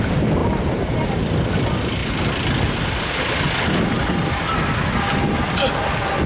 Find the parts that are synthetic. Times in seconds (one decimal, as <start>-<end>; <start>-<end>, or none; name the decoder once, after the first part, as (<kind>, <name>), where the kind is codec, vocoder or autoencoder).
none